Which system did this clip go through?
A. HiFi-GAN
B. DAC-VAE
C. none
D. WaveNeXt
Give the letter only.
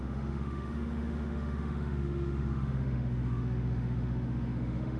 B